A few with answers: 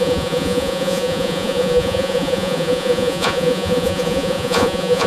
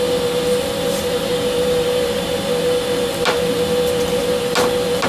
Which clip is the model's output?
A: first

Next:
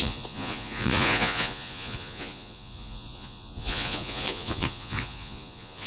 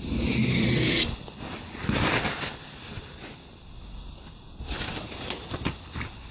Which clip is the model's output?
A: first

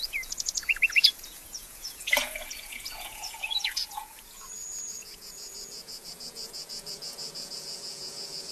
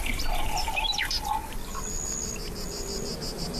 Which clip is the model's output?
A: first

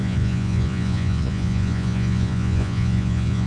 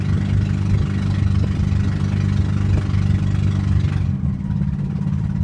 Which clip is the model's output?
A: first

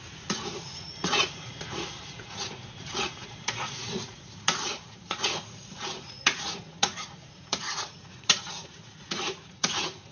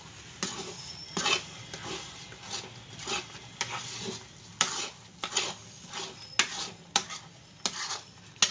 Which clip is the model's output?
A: first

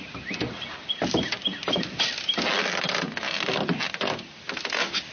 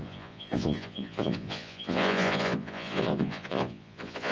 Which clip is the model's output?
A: second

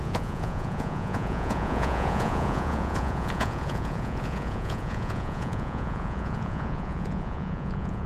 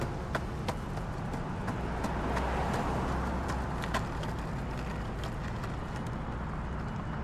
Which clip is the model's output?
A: first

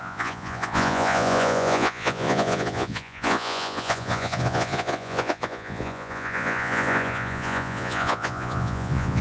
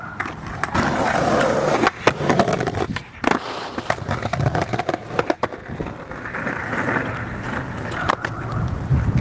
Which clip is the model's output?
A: first